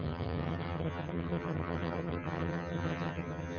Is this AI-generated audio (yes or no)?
yes